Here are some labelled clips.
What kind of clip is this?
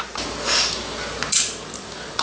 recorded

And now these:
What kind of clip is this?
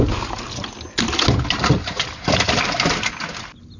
recorded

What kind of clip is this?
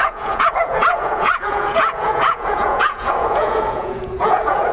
remade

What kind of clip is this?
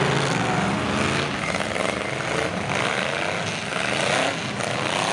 recorded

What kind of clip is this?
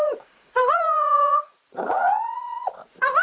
remade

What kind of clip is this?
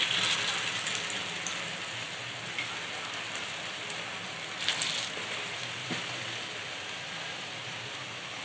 recorded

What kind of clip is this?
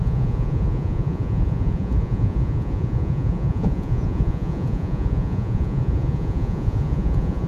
remade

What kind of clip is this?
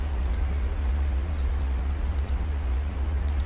remade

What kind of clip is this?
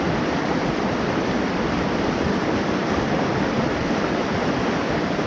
recorded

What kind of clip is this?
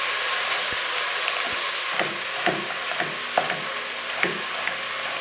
recorded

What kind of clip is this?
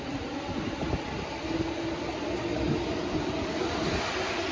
recorded